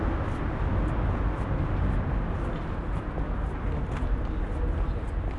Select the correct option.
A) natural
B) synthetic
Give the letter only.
A